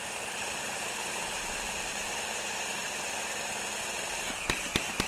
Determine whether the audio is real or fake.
fake